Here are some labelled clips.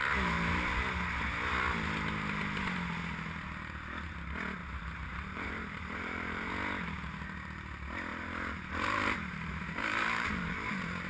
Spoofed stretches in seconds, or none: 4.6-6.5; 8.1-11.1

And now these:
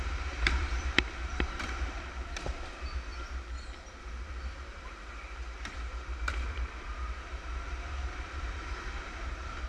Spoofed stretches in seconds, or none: 0.0-3.1; 4.0-9.7

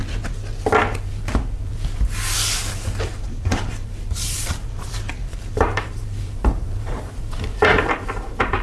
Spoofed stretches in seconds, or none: 1.0-1.7; 3.0-8.6

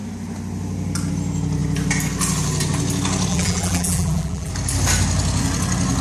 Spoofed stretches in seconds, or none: 3.3-4.5

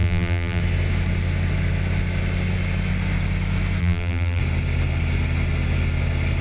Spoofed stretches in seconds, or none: 0.0-0.6; 3.8-4.4